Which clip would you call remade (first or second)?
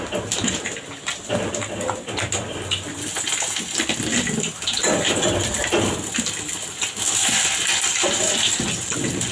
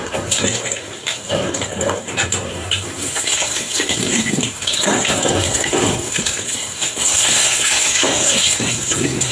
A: second